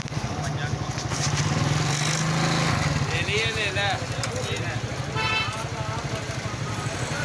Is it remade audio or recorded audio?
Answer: recorded